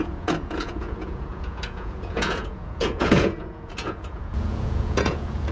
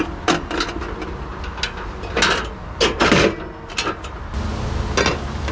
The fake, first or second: first